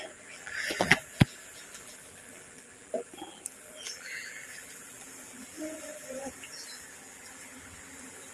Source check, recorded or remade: remade